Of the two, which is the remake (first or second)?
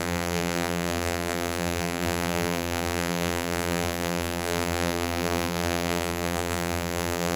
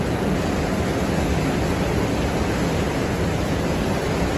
first